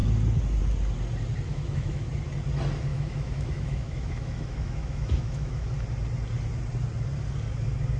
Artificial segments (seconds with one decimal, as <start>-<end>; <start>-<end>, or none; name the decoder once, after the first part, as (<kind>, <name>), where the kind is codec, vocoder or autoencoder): 1.5-2.1 (autoencoder, DAC-VAE); 2.9-5.7

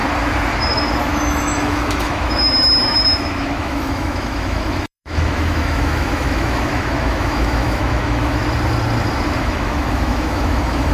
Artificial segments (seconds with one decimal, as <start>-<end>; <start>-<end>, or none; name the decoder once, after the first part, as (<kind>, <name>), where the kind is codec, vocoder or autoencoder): 1.0-8.4 (autoencoder, DAC-VAE); 9.4-10.9

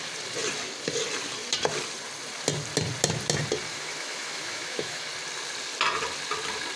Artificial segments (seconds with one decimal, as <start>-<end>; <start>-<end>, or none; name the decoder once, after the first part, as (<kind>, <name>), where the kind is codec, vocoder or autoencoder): 3.7-5.0 (autoencoder, DAC-VAE)

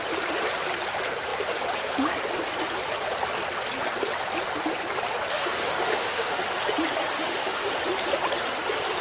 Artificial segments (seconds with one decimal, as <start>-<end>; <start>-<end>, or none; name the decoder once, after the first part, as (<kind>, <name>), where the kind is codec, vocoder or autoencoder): 5.3-6.4 (autoencoder, DAC-VAE); 7.1-7.7

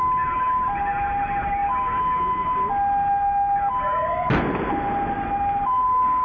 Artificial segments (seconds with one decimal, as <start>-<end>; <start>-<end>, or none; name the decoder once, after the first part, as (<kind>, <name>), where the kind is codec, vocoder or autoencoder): none

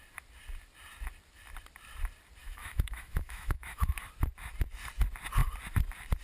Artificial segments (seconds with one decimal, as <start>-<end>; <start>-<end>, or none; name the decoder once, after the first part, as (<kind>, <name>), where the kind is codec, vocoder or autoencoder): 2.4-4.0 (autoencoder, DAC-VAE)

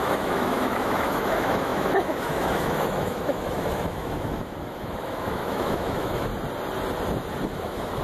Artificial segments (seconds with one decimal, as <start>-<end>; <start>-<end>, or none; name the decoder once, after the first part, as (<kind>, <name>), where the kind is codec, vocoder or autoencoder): 0.0-6.3 (autoencoder, DAC-VAE); 7.5-8.0

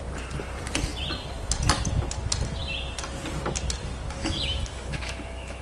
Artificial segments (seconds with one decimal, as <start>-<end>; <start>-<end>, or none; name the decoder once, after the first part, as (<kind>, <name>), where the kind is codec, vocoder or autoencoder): 4.2-5.6 (autoencoder, DAC-VAE)